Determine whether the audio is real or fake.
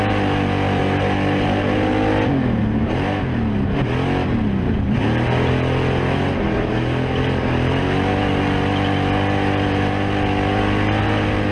real